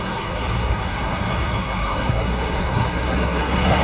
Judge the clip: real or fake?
fake